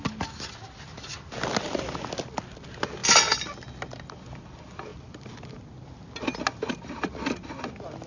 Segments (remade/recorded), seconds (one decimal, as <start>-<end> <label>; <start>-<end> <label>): 0.0-8.1 recorded